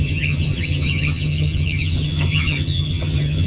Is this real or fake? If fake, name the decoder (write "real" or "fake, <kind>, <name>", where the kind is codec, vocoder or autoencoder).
fake, vocoder, HiFi-GAN